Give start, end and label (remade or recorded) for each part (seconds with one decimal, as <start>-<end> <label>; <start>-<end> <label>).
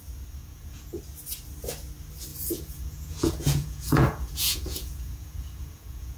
0.0-0.4 recorded; 0.4-1.0 remade; 1.0-2.3 recorded; 2.3-6.2 remade